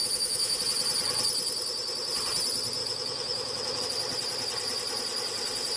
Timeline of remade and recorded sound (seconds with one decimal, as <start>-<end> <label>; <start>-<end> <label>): 0.0-0.6 remade; 0.6-2.8 recorded; 2.8-3.8 remade; 3.8-5.8 recorded